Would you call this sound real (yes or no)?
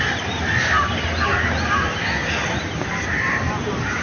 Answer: yes